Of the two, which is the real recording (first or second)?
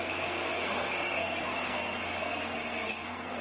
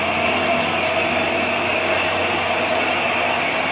second